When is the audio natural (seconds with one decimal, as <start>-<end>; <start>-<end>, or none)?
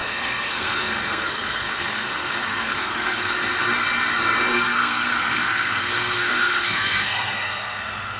3.3-4.5